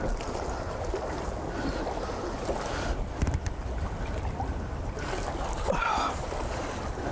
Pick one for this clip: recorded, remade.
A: recorded